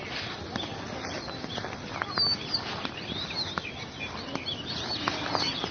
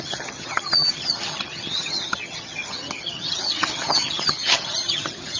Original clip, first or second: first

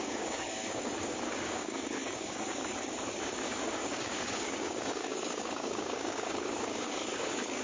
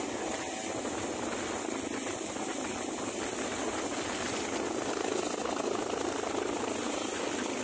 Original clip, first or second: second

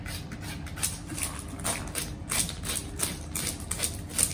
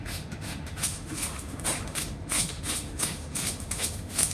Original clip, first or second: first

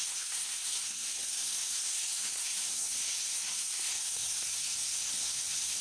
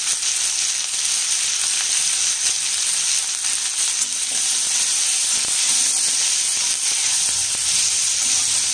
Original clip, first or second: second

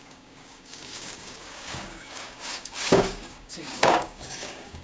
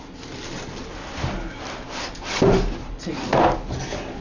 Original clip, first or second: second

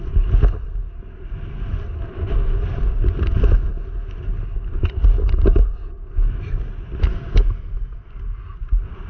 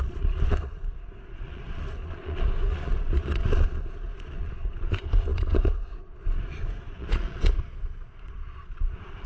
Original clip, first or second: first